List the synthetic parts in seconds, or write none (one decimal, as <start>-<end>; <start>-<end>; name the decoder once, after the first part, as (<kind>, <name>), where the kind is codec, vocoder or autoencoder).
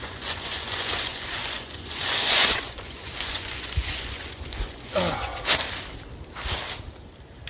0.0-5.3 (vocoder, Vocos)